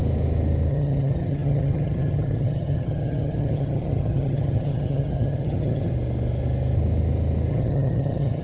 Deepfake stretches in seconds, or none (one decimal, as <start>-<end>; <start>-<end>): 0.7-5.9; 7.5-8.4